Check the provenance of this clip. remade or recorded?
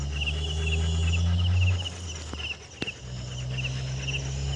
recorded